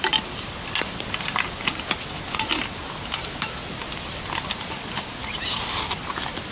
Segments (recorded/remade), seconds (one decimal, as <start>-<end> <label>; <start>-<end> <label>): 0.0-6.5 recorded